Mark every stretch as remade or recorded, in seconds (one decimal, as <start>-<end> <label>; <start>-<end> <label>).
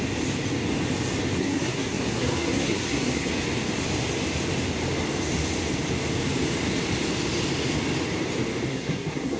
0.0-1.4 recorded; 1.4-3.3 remade; 3.3-8.7 recorded; 8.7-9.4 remade